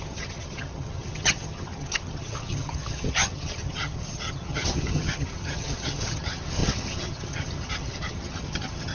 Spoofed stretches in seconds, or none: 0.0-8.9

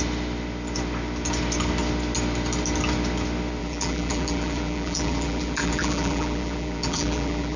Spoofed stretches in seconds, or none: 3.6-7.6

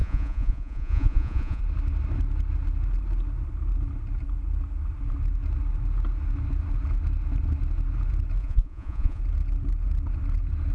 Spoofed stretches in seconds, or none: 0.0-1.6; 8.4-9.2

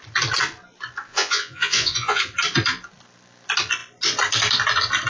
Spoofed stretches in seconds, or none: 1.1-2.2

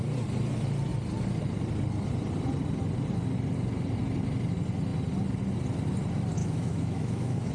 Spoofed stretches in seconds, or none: 6.4-7.5

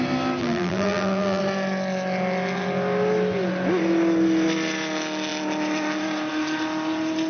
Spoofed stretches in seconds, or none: 0.4-1.4